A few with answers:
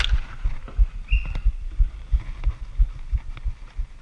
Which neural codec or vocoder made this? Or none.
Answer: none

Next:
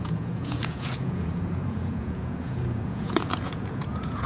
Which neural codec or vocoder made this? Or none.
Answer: vocoder, Vocos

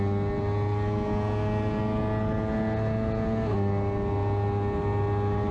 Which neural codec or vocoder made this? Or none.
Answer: none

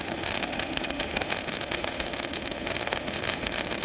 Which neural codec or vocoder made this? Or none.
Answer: autoencoder, DAC-VAE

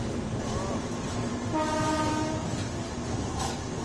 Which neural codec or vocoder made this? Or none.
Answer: none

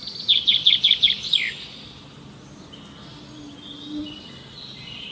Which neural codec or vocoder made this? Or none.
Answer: none